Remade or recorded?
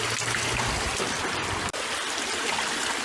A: recorded